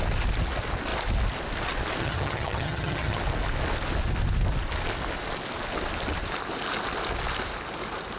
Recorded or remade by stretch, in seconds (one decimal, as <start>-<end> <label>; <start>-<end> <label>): 0.0-2.0 recorded; 2.0-3.2 remade; 3.2-8.2 recorded